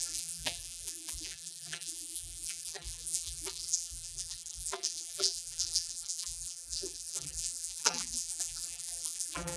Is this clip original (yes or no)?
no